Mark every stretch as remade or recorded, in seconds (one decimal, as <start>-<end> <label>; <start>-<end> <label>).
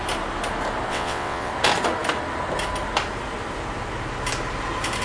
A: 0.0-0.9 recorded; 0.9-1.5 remade; 1.5-5.0 recorded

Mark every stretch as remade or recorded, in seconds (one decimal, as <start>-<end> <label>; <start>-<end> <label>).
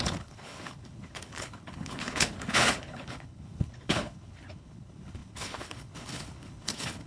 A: 0.0-7.1 remade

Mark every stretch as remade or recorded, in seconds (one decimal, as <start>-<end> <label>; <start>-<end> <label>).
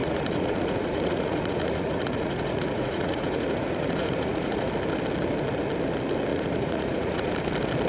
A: 0.0-4.7 remade; 4.7-6.3 recorded; 6.3-7.3 remade; 7.3-7.9 recorded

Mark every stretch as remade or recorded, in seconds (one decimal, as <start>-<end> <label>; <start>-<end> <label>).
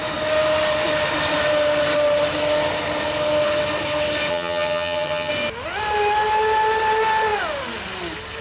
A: 0.0-4.3 recorded; 4.3-5.3 remade; 5.3-8.4 recorded